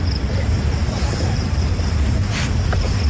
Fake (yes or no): yes